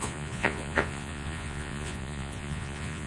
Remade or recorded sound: remade